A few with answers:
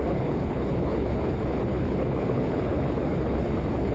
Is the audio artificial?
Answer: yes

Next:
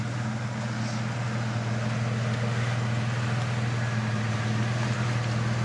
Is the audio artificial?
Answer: no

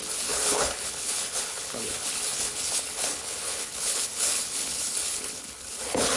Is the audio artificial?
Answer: yes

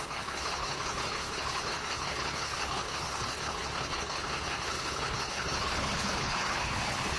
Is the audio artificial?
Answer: yes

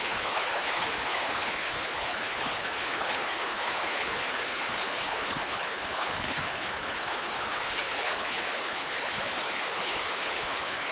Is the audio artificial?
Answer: yes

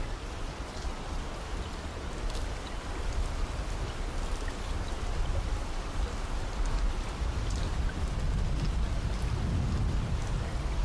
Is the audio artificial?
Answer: no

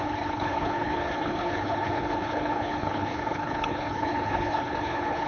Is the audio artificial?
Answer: yes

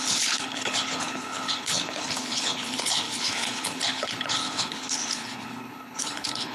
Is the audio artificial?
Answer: yes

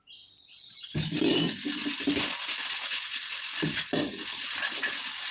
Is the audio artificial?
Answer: no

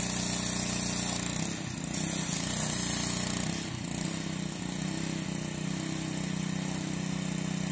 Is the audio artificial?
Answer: no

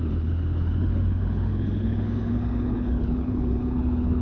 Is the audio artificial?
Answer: yes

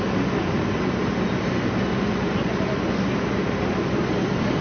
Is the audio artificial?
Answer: no